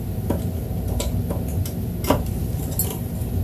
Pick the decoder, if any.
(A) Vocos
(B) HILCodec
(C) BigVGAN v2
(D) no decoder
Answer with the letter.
D